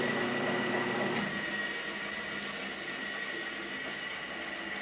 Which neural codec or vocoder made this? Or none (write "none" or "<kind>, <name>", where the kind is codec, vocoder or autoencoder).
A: none